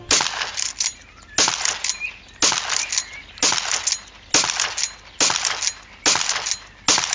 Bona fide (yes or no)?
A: yes